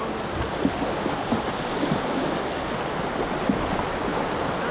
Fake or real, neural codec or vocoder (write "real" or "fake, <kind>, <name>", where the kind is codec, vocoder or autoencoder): real